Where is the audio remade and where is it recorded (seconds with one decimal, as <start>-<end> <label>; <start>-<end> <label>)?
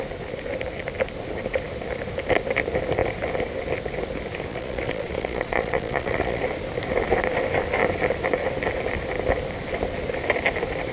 0.0-4.5 recorded; 4.5-6.4 remade; 6.4-10.9 recorded